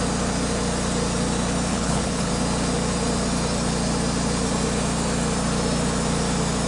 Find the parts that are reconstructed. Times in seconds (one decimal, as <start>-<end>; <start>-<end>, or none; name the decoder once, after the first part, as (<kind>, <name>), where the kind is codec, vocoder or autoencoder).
1.7-2.3 (codec, HILCodec)